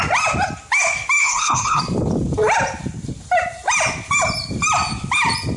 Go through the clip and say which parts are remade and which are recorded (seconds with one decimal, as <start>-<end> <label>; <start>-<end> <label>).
0.0-1.2 recorded; 1.2-1.8 remade; 1.8-5.6 recorded